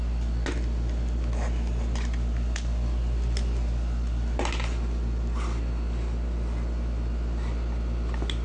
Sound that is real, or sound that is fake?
real